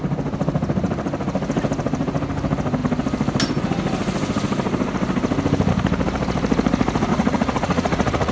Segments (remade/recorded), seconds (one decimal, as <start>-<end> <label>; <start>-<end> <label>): 0.0-7.1 recorded; 7.1-8.3 remade